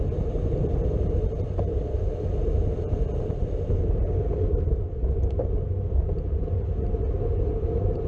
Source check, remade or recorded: recorded